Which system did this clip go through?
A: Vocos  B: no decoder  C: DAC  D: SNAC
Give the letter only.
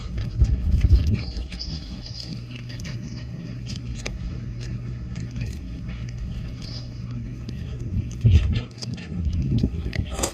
D